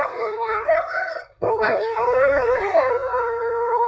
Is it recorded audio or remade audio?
remade